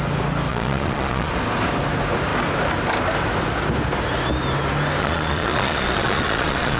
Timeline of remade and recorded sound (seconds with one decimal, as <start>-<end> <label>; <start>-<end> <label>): 0.0-0.5 recorded; 0.5-1.3 remade; 1.3-5.0 recorded; 5.0-6.8 remade